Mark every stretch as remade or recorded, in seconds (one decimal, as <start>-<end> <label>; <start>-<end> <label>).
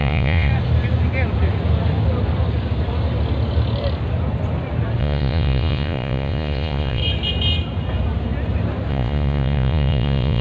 0.0-0.5 remade; 0.5-5.0 recorded; 5.0-7.0 remade; 7.0-8.9 recorded; 8.9-10.4 remade